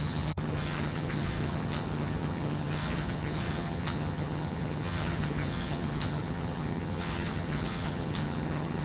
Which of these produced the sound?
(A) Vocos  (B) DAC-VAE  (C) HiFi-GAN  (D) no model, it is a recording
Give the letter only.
C